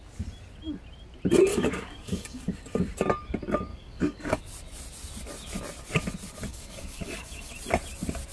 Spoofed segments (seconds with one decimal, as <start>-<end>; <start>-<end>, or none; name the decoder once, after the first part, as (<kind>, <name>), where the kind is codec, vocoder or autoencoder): 1.5-2.5 (codec, DAC); 3.7-4.5; 6.5-7.5